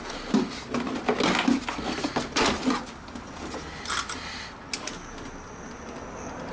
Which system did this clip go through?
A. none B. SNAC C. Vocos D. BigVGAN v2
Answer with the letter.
A